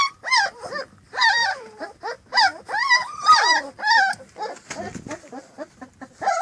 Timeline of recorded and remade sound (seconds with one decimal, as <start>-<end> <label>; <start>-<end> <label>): 0.0-0.6 remade; 0.6-6.4 recorded